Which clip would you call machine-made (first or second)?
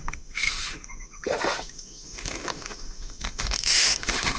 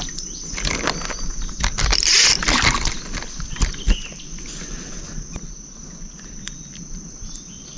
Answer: first